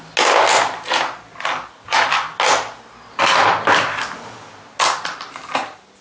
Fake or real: real